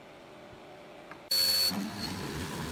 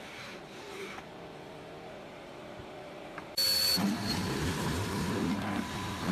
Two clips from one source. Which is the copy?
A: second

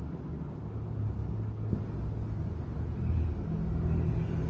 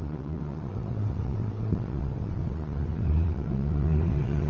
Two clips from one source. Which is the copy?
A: second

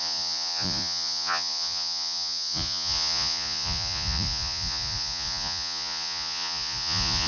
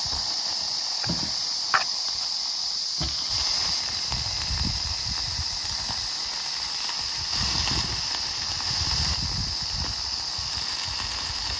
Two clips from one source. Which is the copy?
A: first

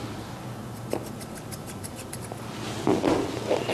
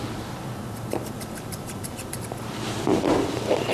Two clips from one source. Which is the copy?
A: second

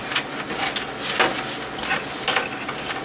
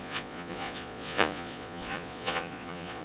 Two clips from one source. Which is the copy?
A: second